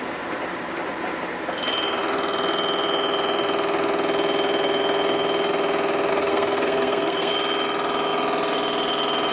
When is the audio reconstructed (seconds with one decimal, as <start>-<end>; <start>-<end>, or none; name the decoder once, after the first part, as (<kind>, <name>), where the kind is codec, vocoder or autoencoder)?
6.1-7.3 (codec, SNAC)